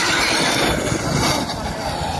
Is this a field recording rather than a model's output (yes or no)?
yes